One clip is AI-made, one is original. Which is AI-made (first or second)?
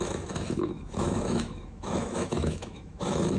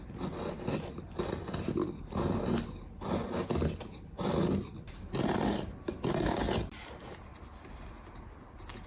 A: first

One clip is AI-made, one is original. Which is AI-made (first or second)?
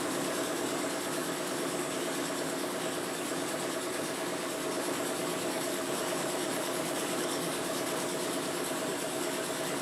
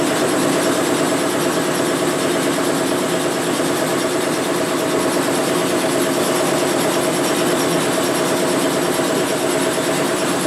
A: first